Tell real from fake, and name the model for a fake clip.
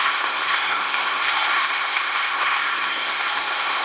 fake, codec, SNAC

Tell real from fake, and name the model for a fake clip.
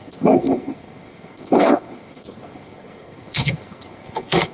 fake, codec, SNAC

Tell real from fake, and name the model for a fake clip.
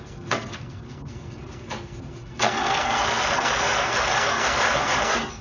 fake, codec, SNAC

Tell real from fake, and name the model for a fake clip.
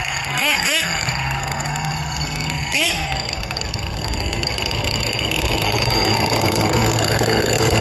fake, codec, SNAC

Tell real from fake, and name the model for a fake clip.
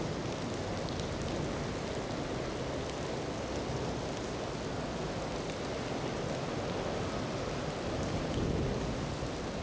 real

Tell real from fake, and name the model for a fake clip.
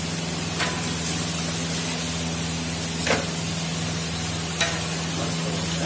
real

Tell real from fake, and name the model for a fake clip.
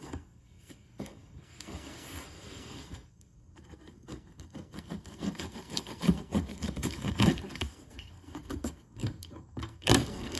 fake, codec, SNAC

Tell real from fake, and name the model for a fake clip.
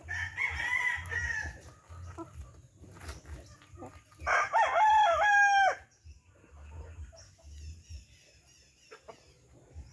real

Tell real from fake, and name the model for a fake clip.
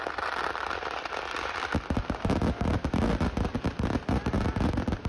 real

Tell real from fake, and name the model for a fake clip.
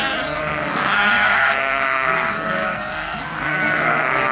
fake, codec, SNAC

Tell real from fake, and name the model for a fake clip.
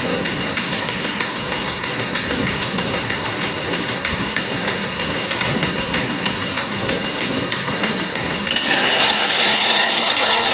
fake, codec, SNAC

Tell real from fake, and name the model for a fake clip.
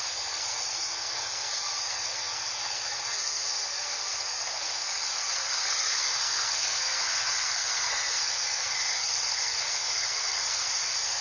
fake, codec, SNAC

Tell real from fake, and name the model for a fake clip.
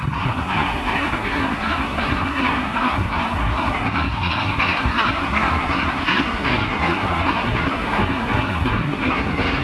fake, codec, SNAC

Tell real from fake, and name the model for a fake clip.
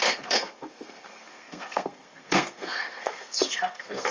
fake, codec, SNAC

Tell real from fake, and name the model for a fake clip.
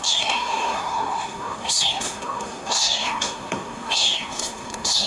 fake, codec, SNAC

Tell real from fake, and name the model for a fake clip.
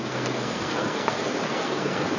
fake, codec, SNAC